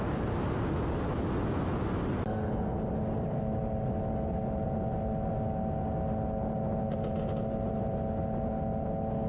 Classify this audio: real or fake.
real